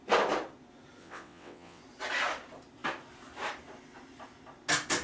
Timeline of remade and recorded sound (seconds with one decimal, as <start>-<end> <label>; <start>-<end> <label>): 0.0-1.0 recorded; 1.0-1.8 remade; 1.8-5.0 recorded